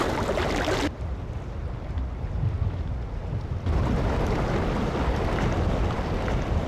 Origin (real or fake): real